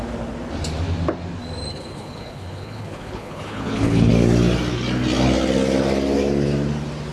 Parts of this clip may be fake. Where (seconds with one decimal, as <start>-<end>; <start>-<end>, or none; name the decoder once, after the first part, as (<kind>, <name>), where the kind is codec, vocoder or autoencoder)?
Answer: 1.7-4.1 (codec, HILCodec)